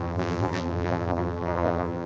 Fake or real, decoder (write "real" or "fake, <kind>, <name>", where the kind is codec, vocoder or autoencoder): fake, vocoder, BigVGAN v2